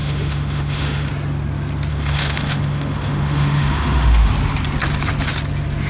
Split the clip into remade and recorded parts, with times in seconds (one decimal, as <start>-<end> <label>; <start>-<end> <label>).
0.0-1.1 remade; 1.1-1.9 recorded; 1.9-4.3 remade; 4.3-5.9 recorded